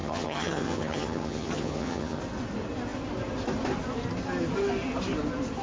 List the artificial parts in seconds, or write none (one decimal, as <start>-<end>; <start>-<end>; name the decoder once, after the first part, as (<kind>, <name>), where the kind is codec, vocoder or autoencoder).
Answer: 0.0-2.2 (vocoder, HiFi-GAN)